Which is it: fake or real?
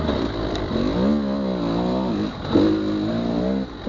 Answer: real